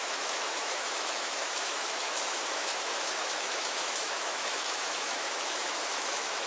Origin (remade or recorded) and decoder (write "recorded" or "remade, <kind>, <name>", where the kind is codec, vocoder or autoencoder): remade, autoencoder, DAC-VAE